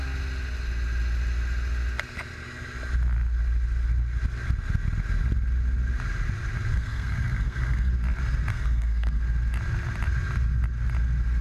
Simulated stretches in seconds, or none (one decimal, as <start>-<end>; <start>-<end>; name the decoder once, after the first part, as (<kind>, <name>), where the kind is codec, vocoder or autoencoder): 6.7-7.9 (codec, SNAC); 8.5-9.2